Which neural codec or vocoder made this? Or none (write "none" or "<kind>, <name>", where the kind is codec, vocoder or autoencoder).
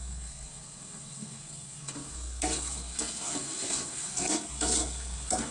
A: codec, SNAC